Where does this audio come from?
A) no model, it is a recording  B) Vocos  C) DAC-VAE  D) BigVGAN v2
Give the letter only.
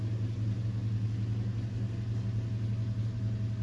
A